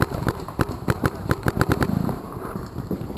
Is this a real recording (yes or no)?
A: no